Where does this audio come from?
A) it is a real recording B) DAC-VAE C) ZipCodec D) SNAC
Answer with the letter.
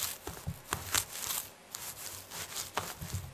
A